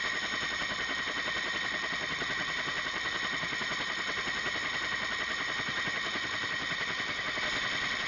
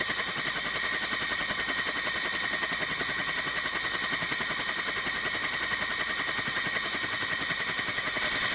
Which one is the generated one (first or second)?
first